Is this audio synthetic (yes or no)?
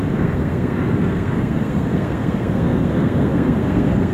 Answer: yes